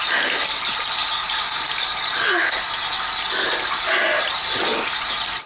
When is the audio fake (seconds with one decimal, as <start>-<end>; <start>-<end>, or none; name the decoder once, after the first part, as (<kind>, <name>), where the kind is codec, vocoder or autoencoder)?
none